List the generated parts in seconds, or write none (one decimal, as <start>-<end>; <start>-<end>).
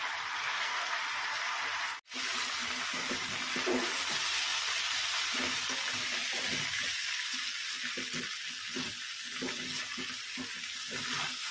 0.4-0.9